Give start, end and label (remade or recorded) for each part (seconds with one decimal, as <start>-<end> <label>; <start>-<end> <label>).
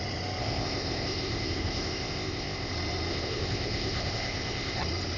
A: 0.0-0.4 recorded; 0.4-2.7 remade; 2.7-3.1 recorded; 3.1-4.8 remade; 4.8-5.2 recorded